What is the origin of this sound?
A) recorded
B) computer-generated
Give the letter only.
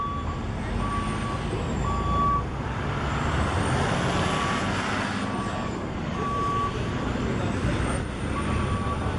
A